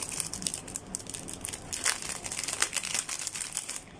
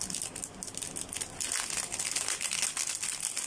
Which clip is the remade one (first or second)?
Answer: first